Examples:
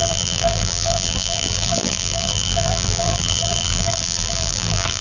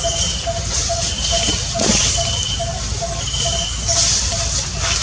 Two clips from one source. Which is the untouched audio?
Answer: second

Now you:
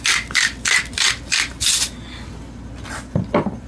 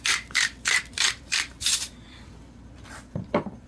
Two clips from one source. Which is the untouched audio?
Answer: first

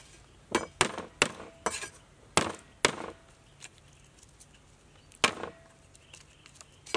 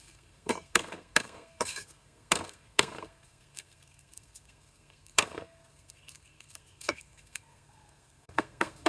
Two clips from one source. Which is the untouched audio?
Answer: first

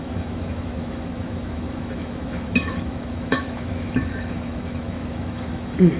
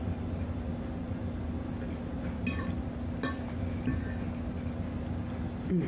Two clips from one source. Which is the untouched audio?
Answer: second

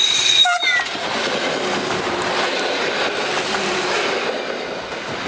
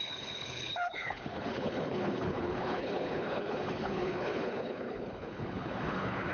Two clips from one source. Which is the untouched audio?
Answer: first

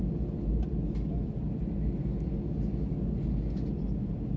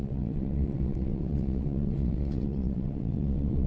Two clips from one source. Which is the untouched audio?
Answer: first